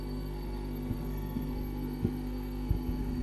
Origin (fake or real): fake